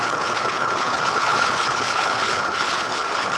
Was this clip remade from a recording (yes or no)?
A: yes